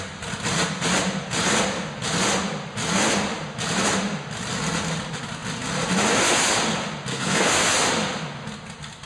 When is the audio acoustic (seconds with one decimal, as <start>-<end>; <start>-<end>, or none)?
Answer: 0.0-7.1; 7.7-9.1